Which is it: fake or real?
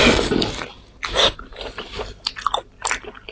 real